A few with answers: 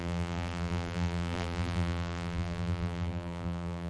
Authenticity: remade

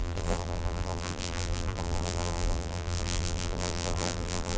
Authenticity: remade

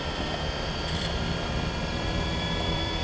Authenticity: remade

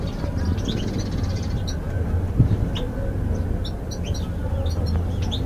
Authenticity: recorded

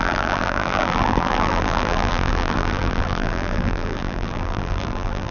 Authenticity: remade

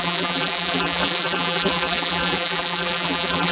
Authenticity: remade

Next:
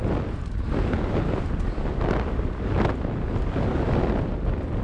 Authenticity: recorded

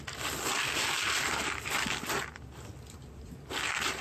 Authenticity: recorded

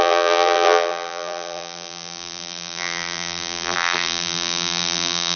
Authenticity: remade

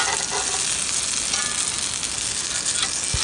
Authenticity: recorded